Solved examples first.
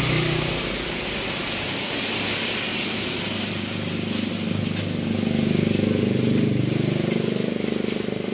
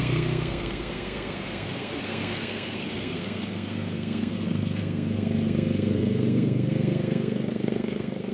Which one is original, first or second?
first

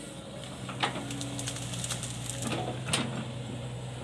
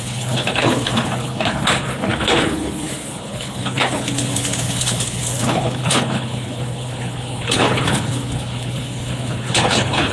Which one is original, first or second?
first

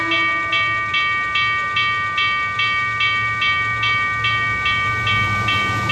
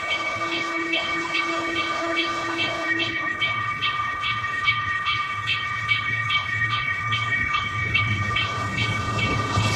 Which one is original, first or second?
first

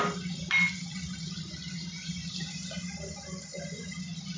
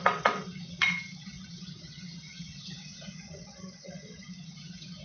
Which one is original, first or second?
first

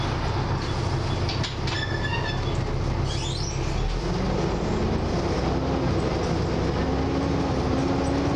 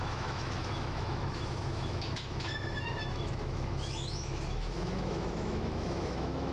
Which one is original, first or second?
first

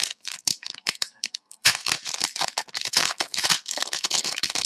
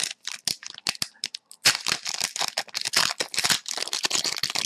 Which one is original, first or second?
second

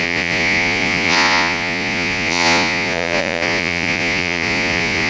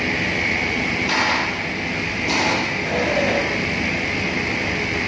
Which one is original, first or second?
second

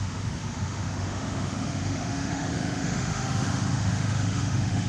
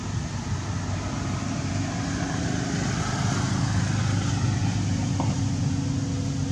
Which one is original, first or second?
second